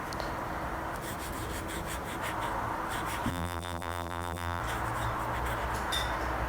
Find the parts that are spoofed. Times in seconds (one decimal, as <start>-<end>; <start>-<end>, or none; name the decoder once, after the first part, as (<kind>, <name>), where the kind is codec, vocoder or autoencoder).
3.3-4.6 (vocoder, BigVGAN v2)